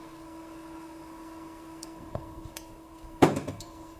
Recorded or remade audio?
remade